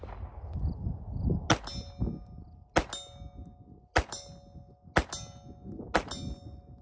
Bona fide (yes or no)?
yes